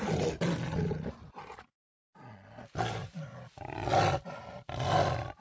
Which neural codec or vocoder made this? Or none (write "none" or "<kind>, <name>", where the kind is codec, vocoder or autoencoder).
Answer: none